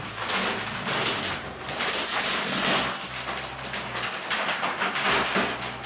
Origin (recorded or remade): recorded